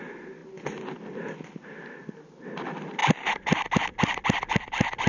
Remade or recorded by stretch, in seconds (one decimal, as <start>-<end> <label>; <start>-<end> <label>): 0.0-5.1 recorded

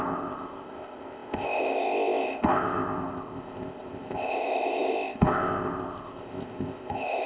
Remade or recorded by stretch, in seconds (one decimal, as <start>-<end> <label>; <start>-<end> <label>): 0.0-7.3 remade

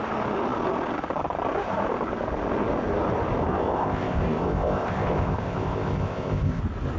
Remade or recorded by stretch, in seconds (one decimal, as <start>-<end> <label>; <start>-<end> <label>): 0.0-3.4 recorded; 3.4-6.6 remade; 6.6-7.0 recorded